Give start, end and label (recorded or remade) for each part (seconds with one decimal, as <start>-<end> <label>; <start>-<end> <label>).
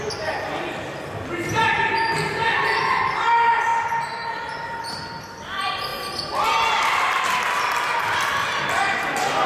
0.0-9.5 recorded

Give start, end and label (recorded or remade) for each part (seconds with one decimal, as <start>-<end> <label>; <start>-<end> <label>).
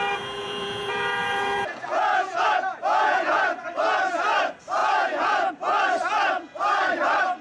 0.0-0.4 recorded; 0.4-3.4 remade; 3.4-4.8 recorded; 4.8-5.5 remade; 5.5-7.4 recorded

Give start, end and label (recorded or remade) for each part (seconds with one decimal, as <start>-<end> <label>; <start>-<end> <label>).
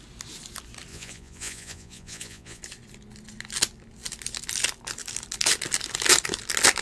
0.0-0.9 recorded; 0.9-2.6 remade; 2.6-6.8 recorded